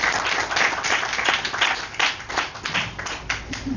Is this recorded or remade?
recorded